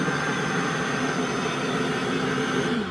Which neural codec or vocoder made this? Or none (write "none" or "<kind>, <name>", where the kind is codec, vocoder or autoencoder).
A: vocoder, BigVGAN v2